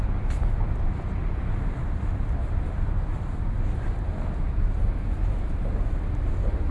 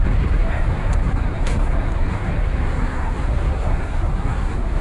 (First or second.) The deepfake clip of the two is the second